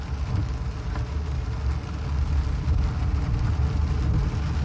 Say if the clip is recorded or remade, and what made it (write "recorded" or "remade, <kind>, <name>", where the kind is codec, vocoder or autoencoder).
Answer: recorded